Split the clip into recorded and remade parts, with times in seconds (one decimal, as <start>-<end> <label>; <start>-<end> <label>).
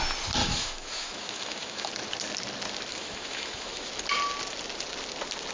0.0-0.4 recorded; 0.4-1.9 remade; 1.9-2.9 recorded; 2.9-3.9 remade; 3.9-5.5 recorded